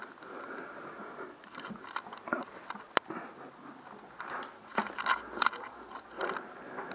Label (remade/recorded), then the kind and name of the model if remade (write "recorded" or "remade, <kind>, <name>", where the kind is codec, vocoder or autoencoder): recorded